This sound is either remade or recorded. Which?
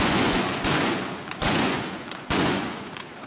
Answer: remade